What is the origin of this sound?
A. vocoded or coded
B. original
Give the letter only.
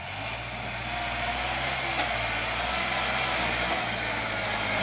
B